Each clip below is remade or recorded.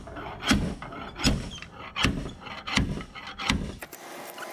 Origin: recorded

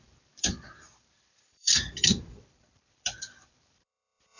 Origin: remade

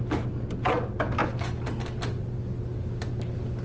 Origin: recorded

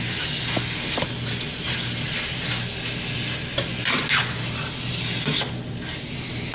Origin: recorded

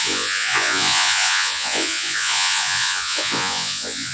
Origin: remade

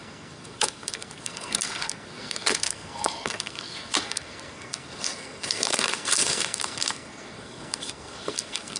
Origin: remade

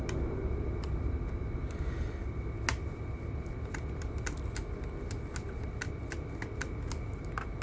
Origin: recorded